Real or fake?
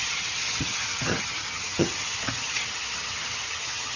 fake